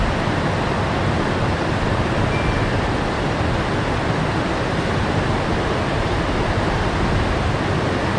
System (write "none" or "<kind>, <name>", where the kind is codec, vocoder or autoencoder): none